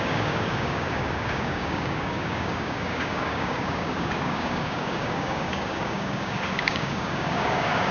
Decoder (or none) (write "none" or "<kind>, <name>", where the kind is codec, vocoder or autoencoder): codec, DAC